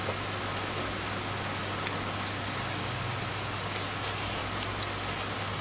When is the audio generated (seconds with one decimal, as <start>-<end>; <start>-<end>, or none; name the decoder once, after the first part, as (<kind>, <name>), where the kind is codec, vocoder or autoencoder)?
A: none